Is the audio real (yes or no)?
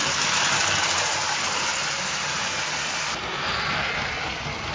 yes